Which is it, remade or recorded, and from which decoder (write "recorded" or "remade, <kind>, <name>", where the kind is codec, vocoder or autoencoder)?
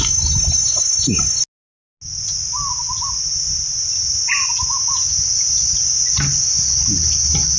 recorded